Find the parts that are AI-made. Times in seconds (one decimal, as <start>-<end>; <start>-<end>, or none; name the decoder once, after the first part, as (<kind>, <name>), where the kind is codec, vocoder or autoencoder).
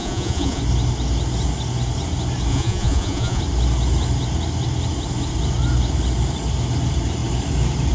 0.0-0.6 (vocoder, Vocos); 2.5-3.4